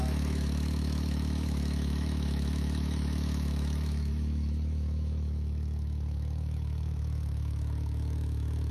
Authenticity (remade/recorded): remade